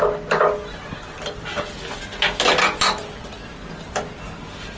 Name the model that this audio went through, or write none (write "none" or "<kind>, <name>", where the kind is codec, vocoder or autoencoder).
none